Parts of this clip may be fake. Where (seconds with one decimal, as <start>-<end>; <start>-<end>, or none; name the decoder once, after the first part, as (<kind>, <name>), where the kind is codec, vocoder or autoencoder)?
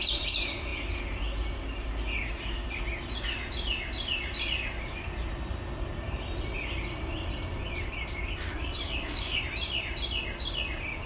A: 8.5-9.4 (codec, DAC)